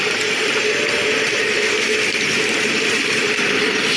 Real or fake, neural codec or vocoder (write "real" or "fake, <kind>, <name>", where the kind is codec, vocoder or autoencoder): fake, vocoder, BigVGAN v2